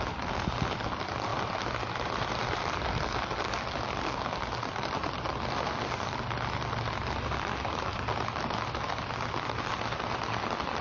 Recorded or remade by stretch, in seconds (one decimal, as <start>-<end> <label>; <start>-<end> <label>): 0.0-10.8 recorded